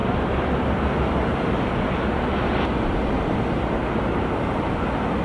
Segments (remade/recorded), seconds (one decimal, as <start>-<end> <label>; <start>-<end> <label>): 0.0-5.2 recorded